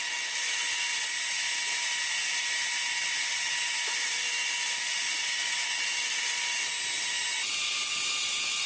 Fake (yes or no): no